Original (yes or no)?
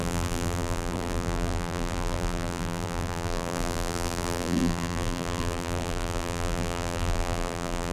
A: no